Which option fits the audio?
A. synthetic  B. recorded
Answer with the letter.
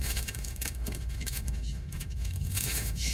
A